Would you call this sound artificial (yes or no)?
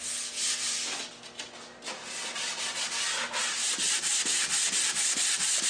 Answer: no